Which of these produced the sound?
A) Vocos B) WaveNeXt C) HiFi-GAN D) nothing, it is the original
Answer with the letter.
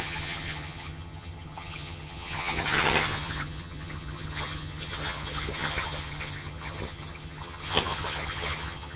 C